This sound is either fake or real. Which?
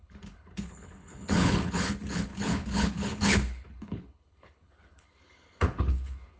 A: fake